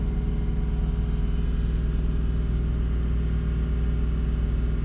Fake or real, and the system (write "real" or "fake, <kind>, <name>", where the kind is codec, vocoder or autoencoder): real